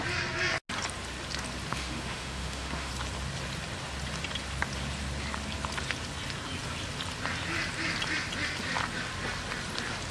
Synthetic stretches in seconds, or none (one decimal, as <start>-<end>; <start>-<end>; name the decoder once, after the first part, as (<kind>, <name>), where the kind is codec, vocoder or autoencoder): 1.7-2.9 (autoencoder, DAC-VAE)